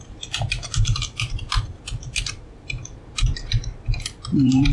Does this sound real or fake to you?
fake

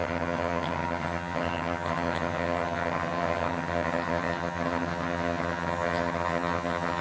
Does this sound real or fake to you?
fake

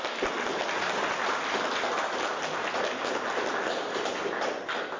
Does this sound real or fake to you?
real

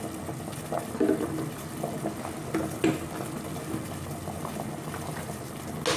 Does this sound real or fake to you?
real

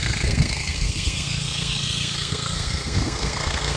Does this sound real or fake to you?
fake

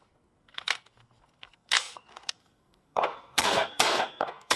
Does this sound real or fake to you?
fake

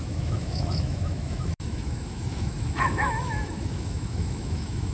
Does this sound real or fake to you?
fake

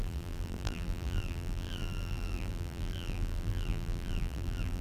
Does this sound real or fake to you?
fake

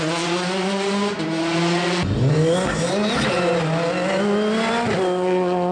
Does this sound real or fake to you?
real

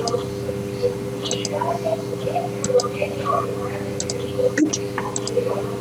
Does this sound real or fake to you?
real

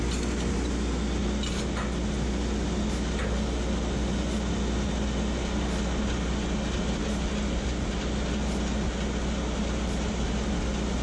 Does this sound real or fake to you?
real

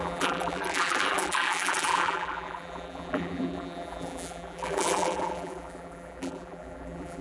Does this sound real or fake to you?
fake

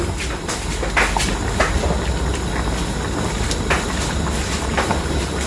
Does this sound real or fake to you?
real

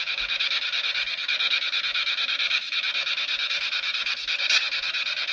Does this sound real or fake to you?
fake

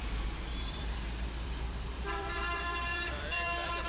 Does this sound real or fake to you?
fake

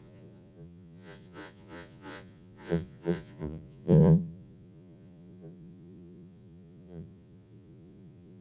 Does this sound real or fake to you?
fake